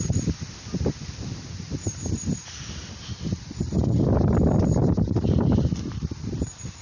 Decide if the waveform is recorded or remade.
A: recorded